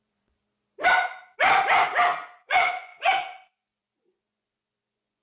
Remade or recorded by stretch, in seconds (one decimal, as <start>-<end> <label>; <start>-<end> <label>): 0.0-0.4 remade; 0.4-2.4 recorded; 2.4-5.2 remade